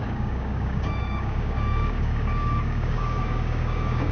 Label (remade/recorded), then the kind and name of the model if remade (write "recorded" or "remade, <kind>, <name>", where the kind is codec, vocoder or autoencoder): remade, codec, DAC